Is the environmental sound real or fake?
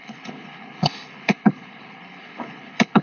fake